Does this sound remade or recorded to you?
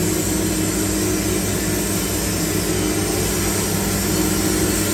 recorded